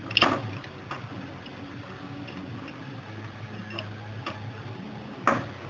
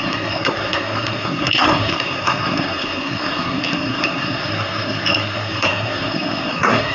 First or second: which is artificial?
second